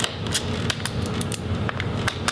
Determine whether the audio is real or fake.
real